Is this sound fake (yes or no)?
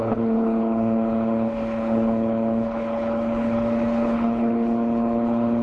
yes